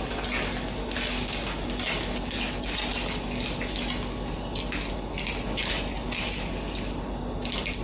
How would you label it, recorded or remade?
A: recorded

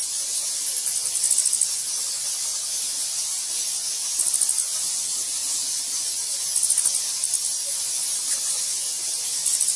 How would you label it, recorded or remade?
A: recorded